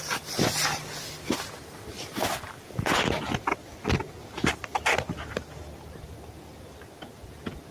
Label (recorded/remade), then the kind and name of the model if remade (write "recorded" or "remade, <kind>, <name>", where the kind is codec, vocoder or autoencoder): recorded